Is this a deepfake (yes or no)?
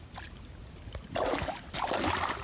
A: no